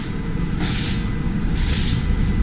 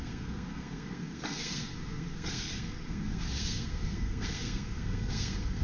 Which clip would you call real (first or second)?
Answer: first